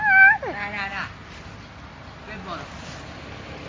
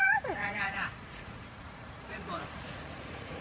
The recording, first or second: first